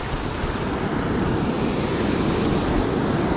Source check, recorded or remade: recorded